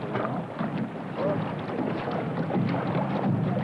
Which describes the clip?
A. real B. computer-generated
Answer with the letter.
A